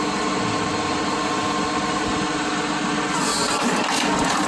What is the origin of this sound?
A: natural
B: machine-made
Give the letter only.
A